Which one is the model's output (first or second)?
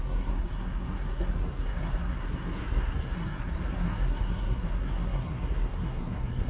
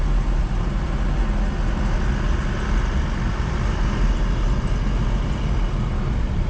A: first